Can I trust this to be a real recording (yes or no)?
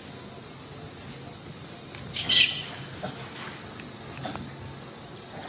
yes